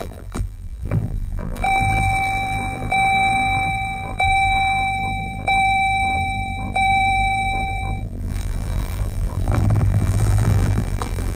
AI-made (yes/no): yes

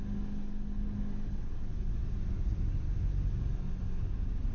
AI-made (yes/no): no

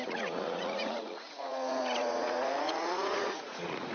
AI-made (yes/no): yes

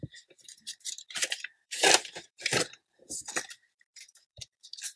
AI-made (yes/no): yes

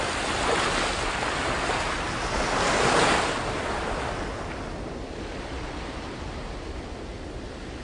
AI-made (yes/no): no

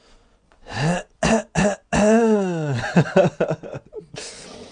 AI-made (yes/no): yes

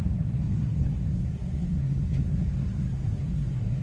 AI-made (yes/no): yes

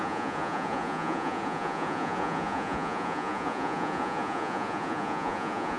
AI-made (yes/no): yes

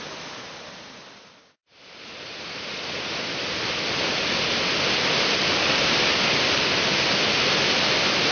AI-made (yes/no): no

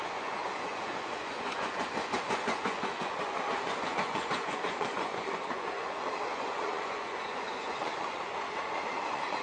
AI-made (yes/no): yes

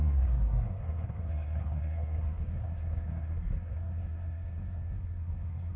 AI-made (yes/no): yes